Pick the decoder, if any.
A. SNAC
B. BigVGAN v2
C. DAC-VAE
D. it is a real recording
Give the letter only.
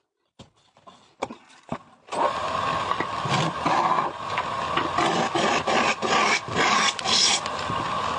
D